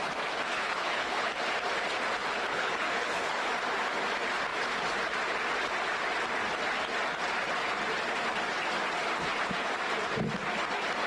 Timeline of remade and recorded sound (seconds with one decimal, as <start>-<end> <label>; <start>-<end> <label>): 0.0-0.5 recorded; 0.5-1.4 remade; 1.4-2.2 recorded; 2.2-3.4 remade; 3.4-11.1 recorded